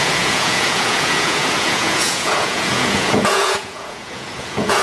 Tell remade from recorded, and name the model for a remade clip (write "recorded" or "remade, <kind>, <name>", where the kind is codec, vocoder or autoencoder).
remade, vocoder, Vocos